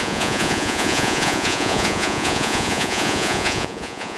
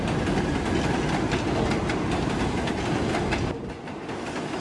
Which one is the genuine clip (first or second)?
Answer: second